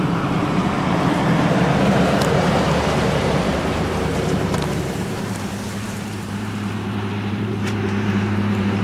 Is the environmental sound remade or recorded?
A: remade